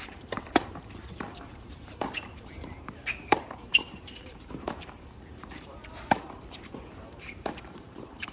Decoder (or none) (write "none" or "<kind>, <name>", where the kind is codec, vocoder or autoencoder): vocoder, BigVGAN v2